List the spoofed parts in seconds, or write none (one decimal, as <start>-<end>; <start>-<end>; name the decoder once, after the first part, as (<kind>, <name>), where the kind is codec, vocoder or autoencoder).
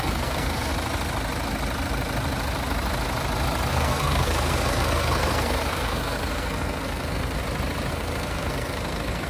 0.0-0.7 (codec, SNAC); 3.7-7.4; 7.9-9.3